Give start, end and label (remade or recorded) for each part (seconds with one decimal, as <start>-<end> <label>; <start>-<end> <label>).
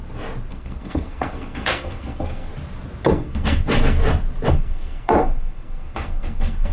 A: 0.0-0.5 recorded; 0.5-2.5 remade; 2.5-3.1 recorded; 3.1-4.0 remade; 4.0-4.5 recorded; 4.5-6.7 remade